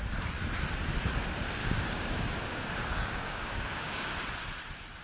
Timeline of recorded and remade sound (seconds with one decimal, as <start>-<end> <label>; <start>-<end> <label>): 0.0-1.6 recorded; 1.6-4.1 remade; 4.1-5.0 recorded